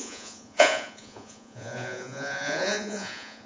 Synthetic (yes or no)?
yes